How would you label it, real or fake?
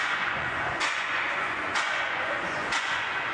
fake